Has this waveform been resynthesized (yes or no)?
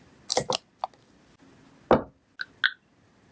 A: no